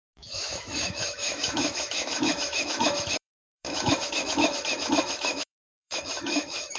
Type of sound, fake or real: fake